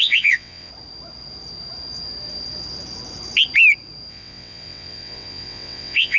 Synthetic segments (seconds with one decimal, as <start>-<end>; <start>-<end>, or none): 0.0-0.7; 4.1-6.2